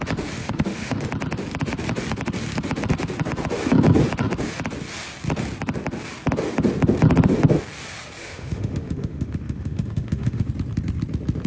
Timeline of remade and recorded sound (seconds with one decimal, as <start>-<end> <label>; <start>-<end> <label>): 0.0-0.4 recorded; 0.4-1.0 remade; 1.0-8.2 recorded; 8.2-10.5 remade; 10.5-11.5 recorded